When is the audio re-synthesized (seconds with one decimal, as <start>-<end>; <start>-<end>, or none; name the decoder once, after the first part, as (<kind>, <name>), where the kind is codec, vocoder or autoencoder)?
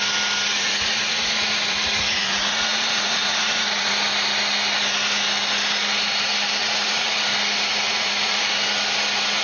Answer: 0.5-3.9 (vocoder, Vocos); 6.6-7.2; 7.7-8.4